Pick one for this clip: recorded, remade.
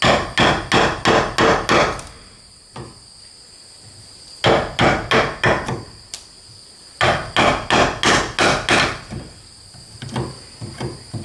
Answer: recorded